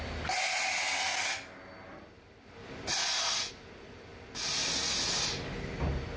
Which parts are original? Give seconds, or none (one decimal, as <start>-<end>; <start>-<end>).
0.0-6.2